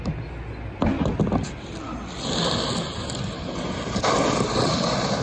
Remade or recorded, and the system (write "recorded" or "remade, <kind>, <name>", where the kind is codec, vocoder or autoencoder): recorded